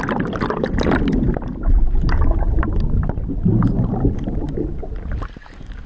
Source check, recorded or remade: recorded